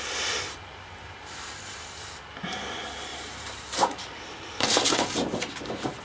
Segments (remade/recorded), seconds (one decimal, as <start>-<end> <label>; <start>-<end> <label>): 0.0-3.1 recorded; 3.1-4.0 remade; 4.0-6.0 recorded